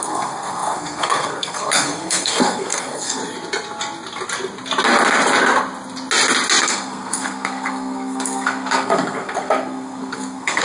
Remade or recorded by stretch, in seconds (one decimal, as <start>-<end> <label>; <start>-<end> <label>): 0.0-3.2 remade; 3.2-6.6 recorded; 6.6-10.6 remade